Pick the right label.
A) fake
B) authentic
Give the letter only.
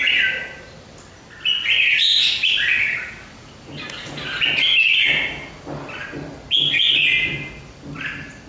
B